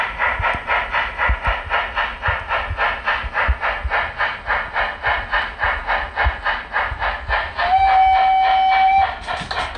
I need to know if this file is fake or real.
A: real